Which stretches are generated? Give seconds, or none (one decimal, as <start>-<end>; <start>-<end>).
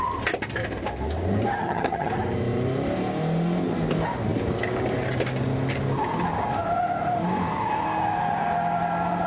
1.6-2.1